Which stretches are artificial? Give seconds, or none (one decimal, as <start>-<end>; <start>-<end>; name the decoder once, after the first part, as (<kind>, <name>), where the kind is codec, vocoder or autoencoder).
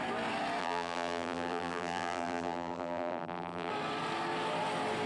0.6-3.7 (vocoder, BigVGAN v2)